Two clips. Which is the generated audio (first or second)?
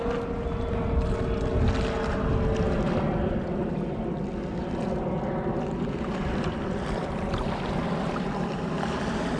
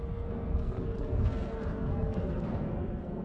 second